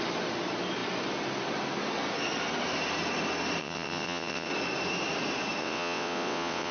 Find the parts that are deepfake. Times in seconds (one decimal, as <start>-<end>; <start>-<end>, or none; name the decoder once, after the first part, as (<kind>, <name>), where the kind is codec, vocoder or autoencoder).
3.6-4.5 (vocoder, WaveNeXt); 5.6-6.7